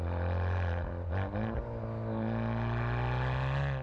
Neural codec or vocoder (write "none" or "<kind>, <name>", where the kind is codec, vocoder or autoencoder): none